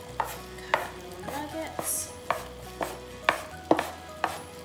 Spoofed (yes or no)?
no